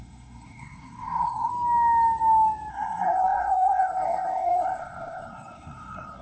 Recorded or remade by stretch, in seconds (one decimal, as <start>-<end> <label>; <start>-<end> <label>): 0.0-1.5 remade; 1.5-2.7 recorded; 2.7-6.2 remade